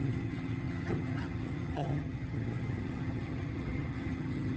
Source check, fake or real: fake